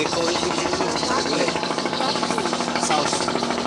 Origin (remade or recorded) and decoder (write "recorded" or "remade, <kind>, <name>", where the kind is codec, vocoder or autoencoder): remade, codec, DAC